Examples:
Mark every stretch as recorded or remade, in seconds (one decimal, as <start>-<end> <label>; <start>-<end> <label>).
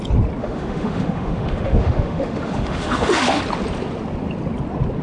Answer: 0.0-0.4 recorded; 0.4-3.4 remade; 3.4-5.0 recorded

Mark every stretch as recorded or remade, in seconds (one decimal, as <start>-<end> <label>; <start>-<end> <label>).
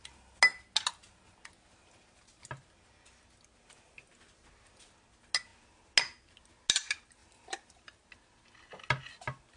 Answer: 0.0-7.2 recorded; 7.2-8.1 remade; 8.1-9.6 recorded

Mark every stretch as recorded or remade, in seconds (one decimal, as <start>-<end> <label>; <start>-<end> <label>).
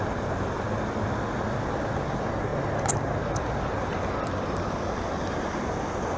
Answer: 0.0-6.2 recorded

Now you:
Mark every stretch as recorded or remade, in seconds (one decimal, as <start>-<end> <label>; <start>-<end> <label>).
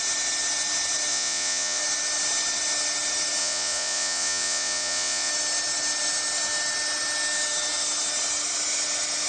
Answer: 0.0-1.1 recorded; 1.1-1.8 remade; 1.8-3.4 recorded; 3.4-5.3 remade; 5.3-9.3 recorded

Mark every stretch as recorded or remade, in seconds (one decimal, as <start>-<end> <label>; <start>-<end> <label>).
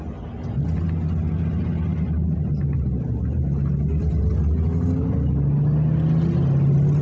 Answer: 0.0-7.0 recorded